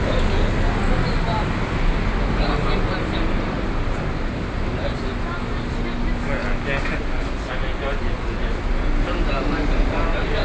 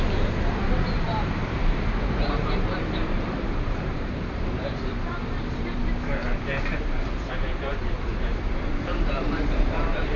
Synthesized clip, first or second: second